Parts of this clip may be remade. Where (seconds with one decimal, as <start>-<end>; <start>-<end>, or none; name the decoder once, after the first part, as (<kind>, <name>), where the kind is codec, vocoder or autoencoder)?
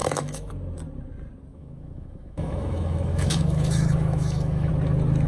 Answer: 0.0-0.5 (autoencoder, DAC-VAE); 1.5-4.7